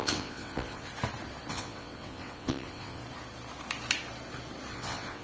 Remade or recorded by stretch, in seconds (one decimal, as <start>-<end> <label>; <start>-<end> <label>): 0.0-0.9 remade; 0.9-1.5 recorded; 1.5-3.0 remade; 3.0-4.7 recorded; 4.7-5.2 remade